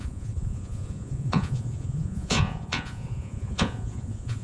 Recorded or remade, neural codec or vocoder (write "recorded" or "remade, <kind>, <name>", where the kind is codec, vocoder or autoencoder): remade, vocoder, Vocos